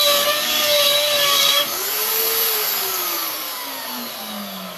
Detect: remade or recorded remade